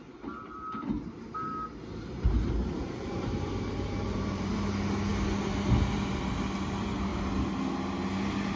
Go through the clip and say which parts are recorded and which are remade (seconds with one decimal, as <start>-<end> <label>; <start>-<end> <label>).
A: 0.0-4.5 remade; 4.5-8.6 recorded